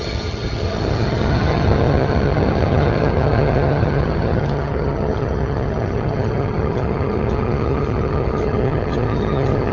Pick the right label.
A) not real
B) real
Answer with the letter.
A